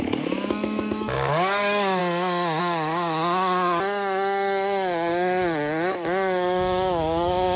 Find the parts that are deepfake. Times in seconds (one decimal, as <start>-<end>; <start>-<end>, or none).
0.0-2.0; 2.6-7.6